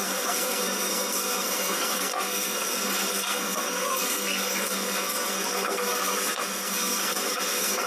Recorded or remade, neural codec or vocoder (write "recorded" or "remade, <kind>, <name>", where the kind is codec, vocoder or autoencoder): remade, codec, SNAC